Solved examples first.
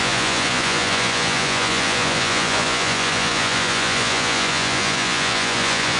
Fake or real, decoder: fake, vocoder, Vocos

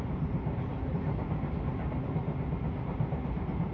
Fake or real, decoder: real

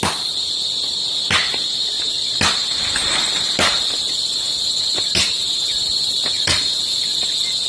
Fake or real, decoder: real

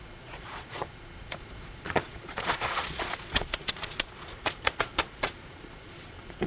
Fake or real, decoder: fake, vocoder, Vocos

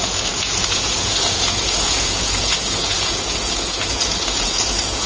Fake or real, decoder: fake, vocoder, Vocos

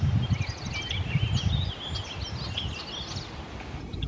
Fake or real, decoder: real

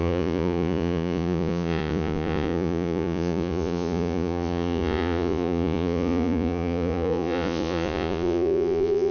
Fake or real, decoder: fake, vocoder, Vocos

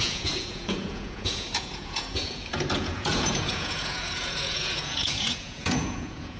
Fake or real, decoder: fake, vocoder, Vocos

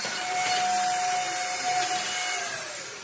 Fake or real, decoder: real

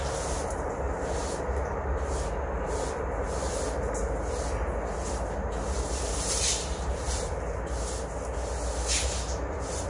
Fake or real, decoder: real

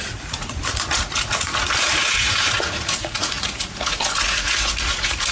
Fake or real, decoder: fake, vocoder, Vocos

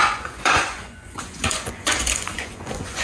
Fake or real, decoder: fake, vocoder, Vocos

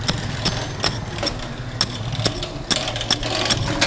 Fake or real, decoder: real